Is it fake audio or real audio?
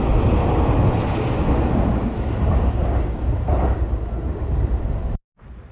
real